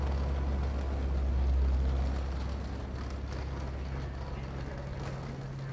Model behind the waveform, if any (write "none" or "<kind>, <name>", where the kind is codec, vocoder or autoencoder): none